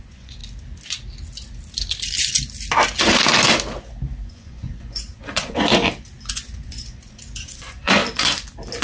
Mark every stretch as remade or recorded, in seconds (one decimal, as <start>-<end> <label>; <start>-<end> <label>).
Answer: 0.0-0.4 remade; 0.4-4.2 recorded; 4.2-5.8 remade; 5.8-6.3 recorded; 6.3-8.0 remade; 8.0-8.8 recorded